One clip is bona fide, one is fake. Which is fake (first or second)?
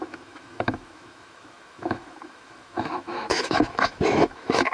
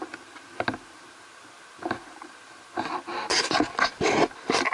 first